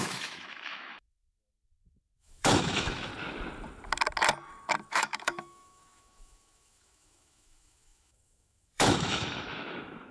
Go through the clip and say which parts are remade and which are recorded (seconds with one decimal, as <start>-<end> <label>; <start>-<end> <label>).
0.0-3.1 remade; 3.1-4.9 recorded; 4.9-10.1 remade